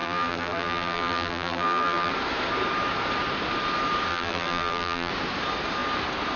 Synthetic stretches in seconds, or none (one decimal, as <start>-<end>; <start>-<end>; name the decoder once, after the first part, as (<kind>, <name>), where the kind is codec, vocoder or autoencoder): 0.0-2.1 (vocoder, BigVGAN v2); 4.1-5.1